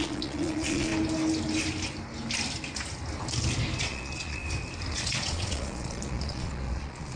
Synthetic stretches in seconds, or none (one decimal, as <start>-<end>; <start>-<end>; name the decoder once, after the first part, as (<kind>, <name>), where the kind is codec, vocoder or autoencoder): 0.0-0.9 (vocoder, Vocos); 3.8-4.4; 4.9-7.2